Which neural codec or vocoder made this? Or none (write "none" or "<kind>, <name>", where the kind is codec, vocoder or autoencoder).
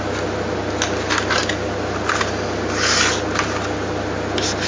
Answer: none